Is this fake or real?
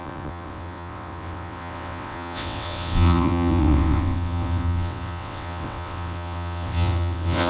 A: fake